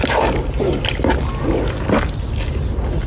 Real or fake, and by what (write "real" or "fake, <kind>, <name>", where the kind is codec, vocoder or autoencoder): real